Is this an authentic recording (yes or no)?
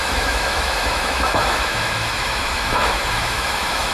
no